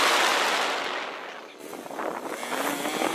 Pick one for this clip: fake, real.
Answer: real